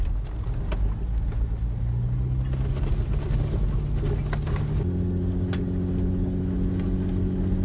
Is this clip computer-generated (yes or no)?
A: no